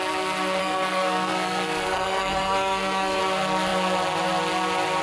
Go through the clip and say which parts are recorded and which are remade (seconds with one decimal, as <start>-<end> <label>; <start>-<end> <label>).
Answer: 0.0-0.6 recorded; 0.6-3.2 remade; 3.2-5.0 recorded